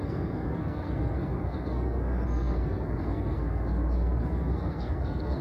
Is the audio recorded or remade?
remade